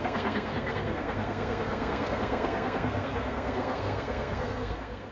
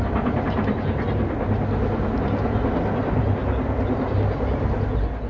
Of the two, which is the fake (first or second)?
first